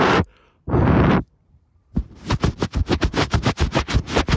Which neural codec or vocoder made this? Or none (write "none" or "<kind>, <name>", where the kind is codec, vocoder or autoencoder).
vocoder, BigVGAN v2